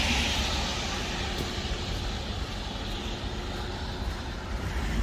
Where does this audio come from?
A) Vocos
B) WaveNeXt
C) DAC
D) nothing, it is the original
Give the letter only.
D